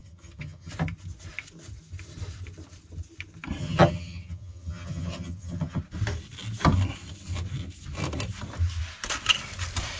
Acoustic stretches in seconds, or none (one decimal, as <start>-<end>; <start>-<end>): 0.7-3.6; 5.8-10.0